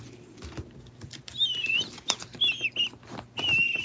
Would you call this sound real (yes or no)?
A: yes